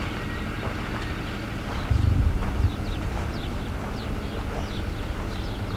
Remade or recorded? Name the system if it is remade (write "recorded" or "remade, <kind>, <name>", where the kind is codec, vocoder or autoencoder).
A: recorded